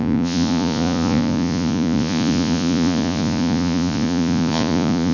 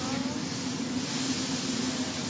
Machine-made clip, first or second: first